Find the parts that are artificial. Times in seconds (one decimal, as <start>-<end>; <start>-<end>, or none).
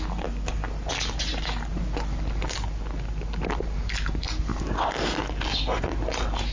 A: none